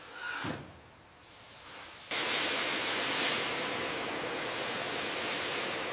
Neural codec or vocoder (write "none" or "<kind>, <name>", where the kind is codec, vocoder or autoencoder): none